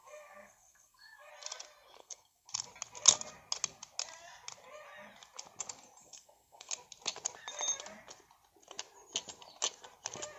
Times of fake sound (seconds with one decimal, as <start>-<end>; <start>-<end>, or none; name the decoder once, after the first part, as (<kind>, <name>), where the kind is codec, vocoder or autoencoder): 0.0-1.3 (codec, SNAC); 2.0-2.5; 6.0-6.7